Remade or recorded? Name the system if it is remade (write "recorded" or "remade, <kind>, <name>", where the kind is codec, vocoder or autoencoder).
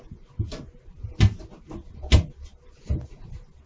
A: recorded